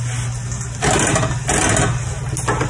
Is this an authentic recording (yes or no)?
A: yes